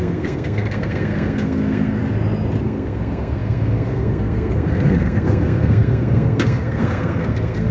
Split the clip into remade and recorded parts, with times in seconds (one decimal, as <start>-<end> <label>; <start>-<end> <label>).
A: 0.0-2.0 remade; 2.0-2.6 recorded; 2.6-7.7 remade